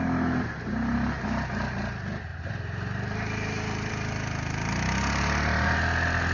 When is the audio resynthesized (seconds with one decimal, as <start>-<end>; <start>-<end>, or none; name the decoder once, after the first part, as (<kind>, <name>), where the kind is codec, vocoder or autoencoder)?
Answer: 2.3-3.9 (vocoder, BigVGAN v2)